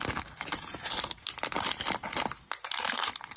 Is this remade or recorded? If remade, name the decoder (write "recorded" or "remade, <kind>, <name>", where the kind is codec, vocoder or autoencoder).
recorded